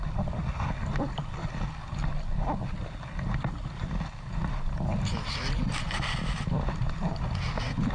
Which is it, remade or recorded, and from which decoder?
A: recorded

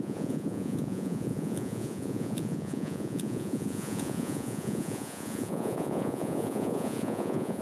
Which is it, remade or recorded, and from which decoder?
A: remade, vocoder, Vocos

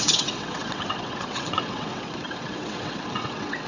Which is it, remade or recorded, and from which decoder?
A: remade, vocoder, WaveNeXt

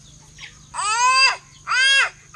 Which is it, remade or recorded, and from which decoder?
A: recorded